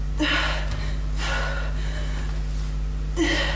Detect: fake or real real